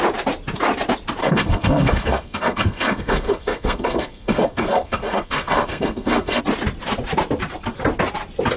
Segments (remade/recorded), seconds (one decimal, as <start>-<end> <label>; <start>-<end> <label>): 0.0-1.2 recorded; 1.2-6.4 remade; 6.4-8.6 recorded